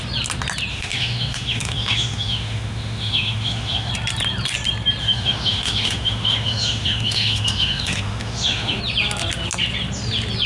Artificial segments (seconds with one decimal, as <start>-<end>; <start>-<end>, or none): 0.7-3.9; 5.0-8.8